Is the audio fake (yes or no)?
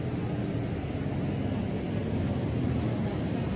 no